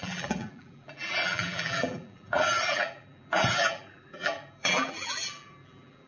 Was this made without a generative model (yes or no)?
no